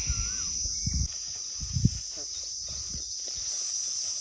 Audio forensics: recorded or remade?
recorded